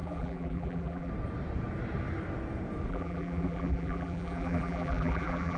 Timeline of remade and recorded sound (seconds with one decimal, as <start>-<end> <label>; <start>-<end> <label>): 0.0-1.1 remade; 1.1-2.9 recorded; 2.9-5.6 remade